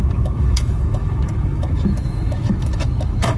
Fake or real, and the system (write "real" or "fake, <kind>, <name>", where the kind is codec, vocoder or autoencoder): fake, autoencoder, DAC-VAE